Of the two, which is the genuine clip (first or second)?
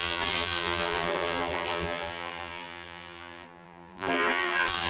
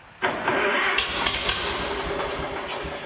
second